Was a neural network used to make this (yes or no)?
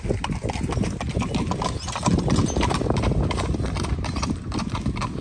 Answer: no